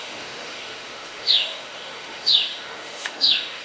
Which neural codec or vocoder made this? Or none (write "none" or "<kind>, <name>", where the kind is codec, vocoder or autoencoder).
autoencoder, DAC-VAE